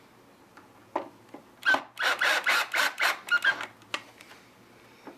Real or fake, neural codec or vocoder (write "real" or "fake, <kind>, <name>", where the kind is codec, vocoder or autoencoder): real